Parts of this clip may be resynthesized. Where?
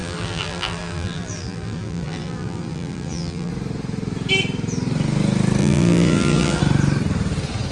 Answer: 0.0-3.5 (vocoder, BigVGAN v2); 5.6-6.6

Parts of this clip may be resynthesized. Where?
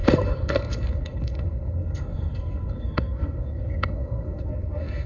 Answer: 0.0-5.1 (codec, SNAC)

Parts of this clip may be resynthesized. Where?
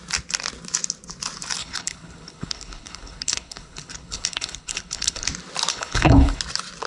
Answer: 1.6-5.3 (codec, HILCodec); 5.7-6.4